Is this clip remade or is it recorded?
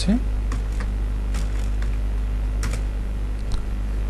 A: recorded